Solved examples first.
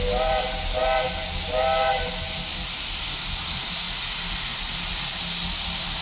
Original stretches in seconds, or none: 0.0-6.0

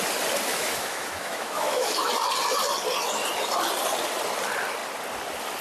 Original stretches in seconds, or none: 0.0-0.5; 2.1-5.6

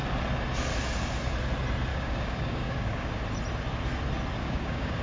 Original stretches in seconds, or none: 0.0-1.9; 3.1-4.4

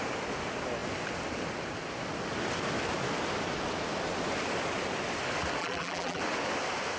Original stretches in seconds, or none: 0.0-5.6; 6.2-7.0

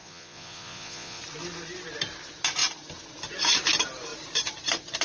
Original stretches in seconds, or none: 1.2-5.0

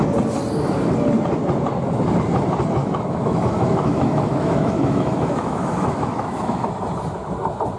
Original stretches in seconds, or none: 0.0-2.8; 6.7-7.8

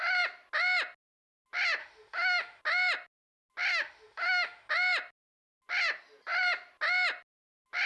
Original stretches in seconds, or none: 0.0-1.8; 2.6-3.7; 4.7-7.9

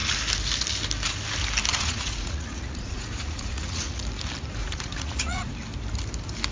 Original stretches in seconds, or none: 0.0-1.7; 4.0-4.6; 5.5-6.5